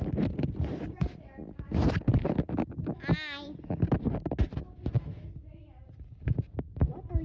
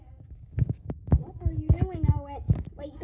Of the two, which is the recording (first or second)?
first